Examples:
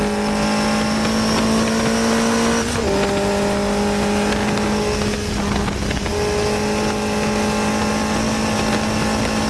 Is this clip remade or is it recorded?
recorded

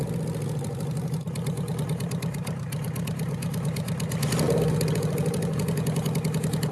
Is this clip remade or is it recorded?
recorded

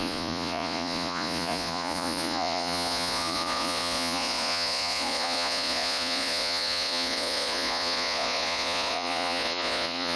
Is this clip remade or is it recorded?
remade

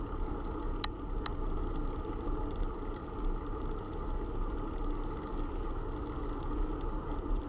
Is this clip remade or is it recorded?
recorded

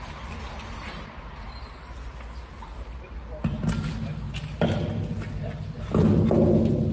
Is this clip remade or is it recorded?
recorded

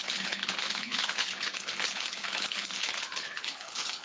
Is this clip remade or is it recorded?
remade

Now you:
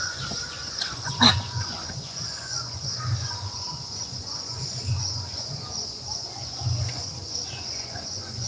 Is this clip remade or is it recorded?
remade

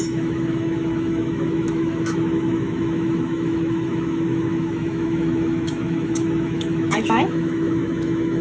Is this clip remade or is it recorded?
remade